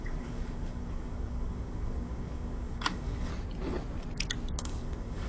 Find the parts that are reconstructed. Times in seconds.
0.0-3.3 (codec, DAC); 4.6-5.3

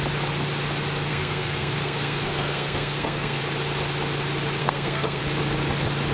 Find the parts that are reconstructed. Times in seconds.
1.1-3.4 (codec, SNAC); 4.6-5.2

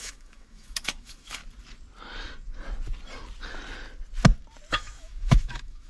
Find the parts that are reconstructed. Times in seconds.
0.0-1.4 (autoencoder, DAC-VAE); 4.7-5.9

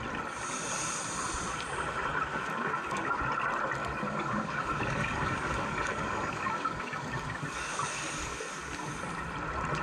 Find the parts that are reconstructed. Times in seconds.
2.3-3.2 (codec, DAC); 3.8-8.5

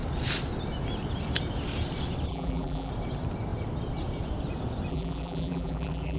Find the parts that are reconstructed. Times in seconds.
2.3-2.9 (vocoder, BigVGAN v2); 4.9-6.2

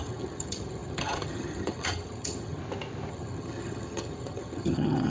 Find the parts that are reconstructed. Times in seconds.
0.0-2.6 (vocoder, HiFi-GAN); 3.1-5.1

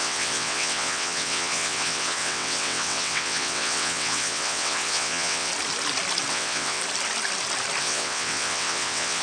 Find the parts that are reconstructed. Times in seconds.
0.0-5.5 (vocoder, WaveNeXt); 6.3-6.8; 7.8-9.2